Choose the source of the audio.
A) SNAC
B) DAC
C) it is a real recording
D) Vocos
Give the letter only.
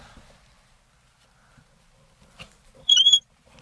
C